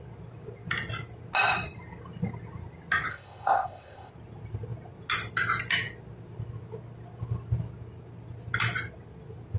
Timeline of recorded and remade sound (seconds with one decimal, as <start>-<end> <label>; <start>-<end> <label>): 0.0-3.1 recorded; 3.1-4.1 remade; 4.1-9.6 recorded